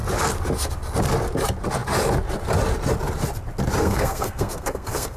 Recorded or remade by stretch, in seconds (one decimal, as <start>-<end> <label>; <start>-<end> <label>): 0.0-3.8 recorded; 3.8-5.2 remade